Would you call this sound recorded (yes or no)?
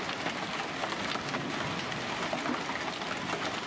yes